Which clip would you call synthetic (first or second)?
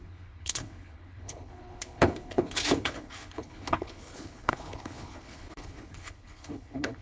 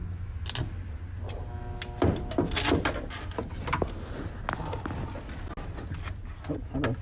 first